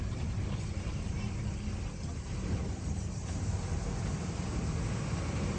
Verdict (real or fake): real